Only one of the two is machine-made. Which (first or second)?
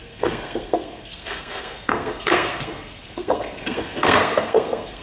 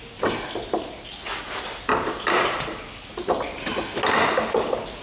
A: first